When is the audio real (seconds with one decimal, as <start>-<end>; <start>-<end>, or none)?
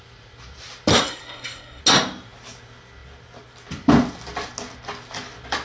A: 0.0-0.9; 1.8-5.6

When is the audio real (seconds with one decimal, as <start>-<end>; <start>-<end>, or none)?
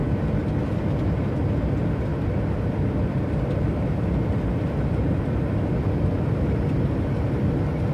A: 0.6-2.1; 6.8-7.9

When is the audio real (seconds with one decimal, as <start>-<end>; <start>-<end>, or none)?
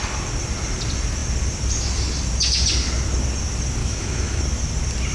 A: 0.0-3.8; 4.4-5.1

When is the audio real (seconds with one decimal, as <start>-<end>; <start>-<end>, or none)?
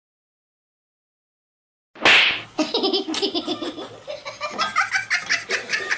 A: 0.0-6.0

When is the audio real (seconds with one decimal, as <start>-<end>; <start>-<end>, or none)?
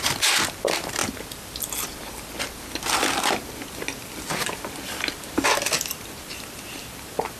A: 0.0-7.4